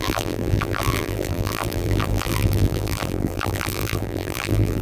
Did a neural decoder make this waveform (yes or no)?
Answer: yes